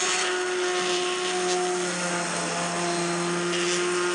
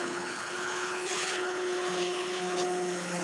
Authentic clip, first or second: first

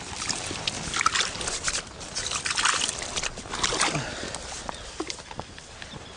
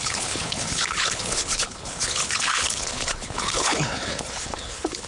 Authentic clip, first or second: first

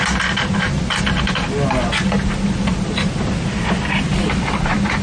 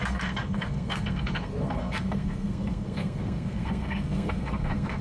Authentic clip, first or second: first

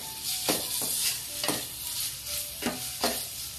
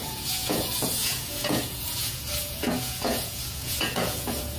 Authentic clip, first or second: first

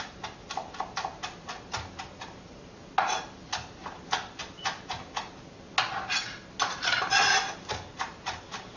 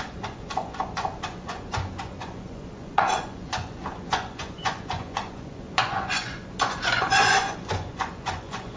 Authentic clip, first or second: first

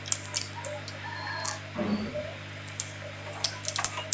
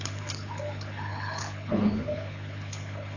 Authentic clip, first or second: first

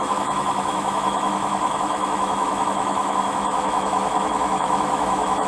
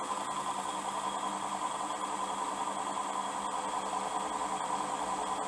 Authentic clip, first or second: second